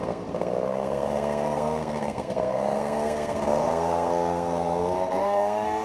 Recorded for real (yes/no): no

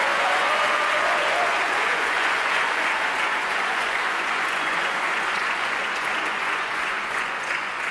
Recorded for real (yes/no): no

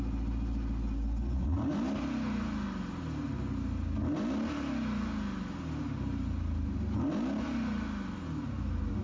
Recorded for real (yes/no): yes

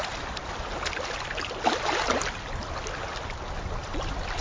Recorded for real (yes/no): yes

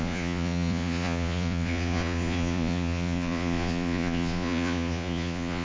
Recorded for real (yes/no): no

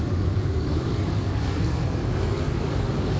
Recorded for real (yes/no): no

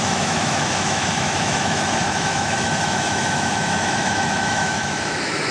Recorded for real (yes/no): no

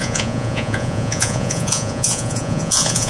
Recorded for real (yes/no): no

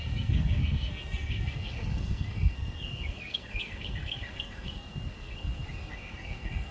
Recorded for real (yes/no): no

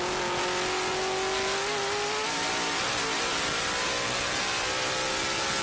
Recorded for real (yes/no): yes